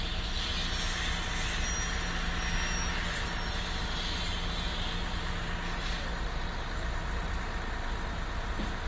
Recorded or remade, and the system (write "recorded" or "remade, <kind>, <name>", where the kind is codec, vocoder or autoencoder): recorded